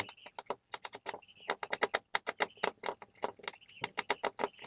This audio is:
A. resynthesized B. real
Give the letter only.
B